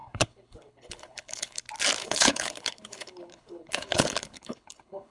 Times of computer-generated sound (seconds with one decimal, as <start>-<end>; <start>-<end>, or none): 0.0-1.6; 2.0-5.1